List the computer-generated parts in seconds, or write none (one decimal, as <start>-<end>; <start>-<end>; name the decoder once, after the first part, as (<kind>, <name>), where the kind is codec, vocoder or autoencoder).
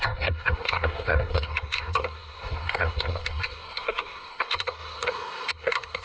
0.0-6.0 (codec, SNAC)